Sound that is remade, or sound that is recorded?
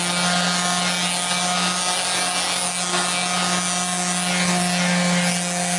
recorded